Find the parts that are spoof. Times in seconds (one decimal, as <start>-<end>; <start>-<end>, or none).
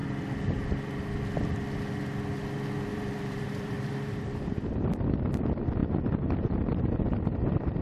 2.9-4.4; 5.8-7.0